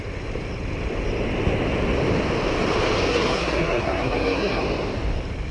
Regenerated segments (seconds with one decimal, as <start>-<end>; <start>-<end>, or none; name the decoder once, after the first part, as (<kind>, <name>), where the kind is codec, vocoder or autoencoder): 3.1-4.6 (codec, SNAC)